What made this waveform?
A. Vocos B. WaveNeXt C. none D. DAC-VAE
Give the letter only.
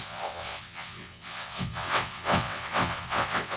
B